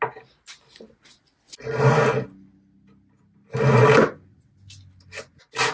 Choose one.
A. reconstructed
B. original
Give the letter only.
B